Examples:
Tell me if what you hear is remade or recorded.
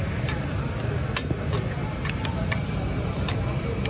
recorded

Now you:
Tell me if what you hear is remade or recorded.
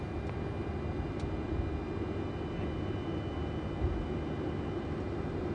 recorded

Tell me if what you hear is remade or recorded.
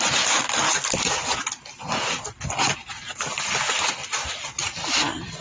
recorded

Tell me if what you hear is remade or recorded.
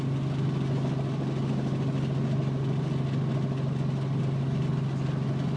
recorded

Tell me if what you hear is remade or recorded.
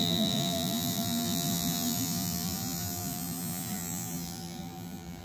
remade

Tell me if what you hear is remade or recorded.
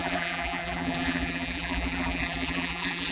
remade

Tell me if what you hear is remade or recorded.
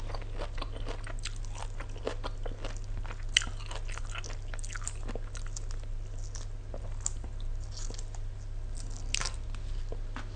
recorded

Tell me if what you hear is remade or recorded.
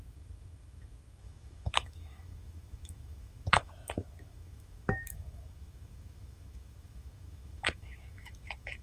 remade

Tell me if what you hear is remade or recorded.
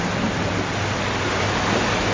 recorded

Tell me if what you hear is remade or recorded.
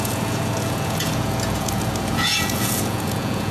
remade